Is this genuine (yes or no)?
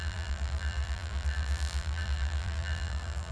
no